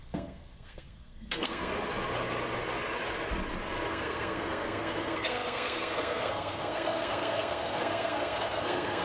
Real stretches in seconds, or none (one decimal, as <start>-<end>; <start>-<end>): 1.7-3.9